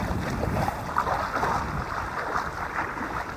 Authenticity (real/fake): real